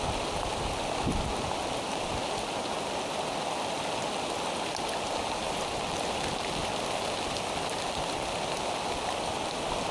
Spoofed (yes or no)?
no